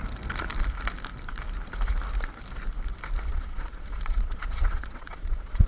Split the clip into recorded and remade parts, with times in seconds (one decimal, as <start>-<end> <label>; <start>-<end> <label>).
0.0-3.3 recorded; 3.3-5.7 remade